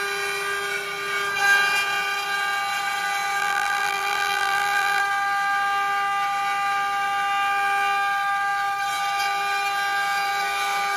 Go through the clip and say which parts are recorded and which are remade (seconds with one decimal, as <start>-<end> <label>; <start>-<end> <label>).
0.0-3.4 recorded; 3.4-5.0 remade; 5.0-11.0 recorded